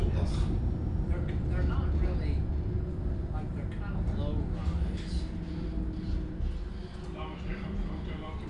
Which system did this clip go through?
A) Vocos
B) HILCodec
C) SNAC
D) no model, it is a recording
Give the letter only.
D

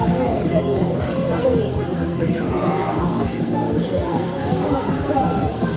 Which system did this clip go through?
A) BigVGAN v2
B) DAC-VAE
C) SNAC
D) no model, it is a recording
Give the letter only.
C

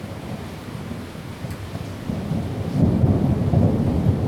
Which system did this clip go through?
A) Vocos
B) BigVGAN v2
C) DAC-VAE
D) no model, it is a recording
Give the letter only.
B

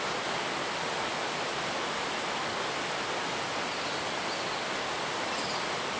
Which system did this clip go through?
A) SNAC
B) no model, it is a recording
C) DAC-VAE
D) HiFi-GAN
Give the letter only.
B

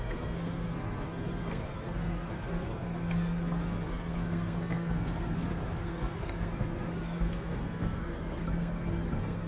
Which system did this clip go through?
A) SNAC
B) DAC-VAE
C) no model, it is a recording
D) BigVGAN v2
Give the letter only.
A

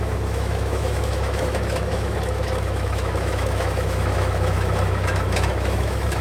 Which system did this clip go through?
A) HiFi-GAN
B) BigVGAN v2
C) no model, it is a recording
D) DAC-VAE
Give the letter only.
D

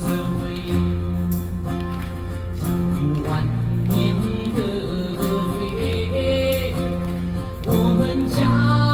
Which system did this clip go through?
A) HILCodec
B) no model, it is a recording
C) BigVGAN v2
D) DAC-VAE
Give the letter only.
D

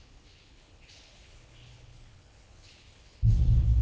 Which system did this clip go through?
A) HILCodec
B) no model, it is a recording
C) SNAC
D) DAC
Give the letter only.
A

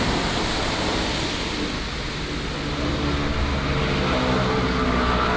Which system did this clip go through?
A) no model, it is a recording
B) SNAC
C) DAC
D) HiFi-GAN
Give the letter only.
A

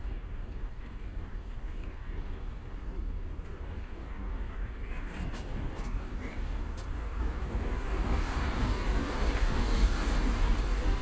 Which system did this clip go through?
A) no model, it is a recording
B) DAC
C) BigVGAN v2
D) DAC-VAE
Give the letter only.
B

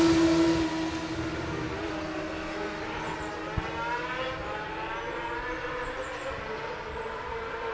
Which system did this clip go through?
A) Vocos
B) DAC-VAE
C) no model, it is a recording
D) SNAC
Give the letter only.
C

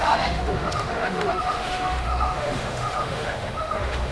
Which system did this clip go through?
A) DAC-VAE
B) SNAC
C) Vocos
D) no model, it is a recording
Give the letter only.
A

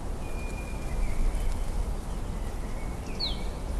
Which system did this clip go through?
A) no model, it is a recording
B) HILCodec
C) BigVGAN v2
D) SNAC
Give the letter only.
A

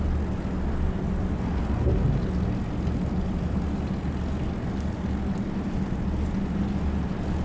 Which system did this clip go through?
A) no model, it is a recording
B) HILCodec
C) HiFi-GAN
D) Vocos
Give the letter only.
A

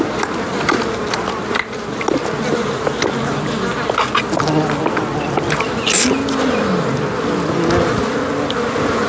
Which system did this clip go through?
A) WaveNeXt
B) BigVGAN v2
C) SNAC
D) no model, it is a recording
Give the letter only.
D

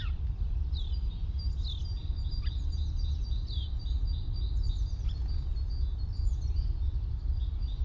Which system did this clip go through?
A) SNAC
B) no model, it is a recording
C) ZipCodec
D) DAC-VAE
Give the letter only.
B